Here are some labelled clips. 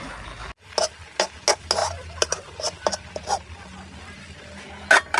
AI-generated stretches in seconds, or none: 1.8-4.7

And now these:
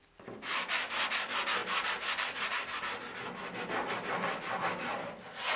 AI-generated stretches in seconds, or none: none

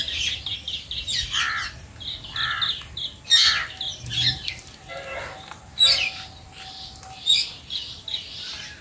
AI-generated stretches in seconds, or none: 3.9-4.6

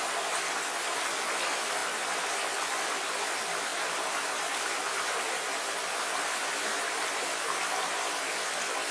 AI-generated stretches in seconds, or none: 3.7-8.9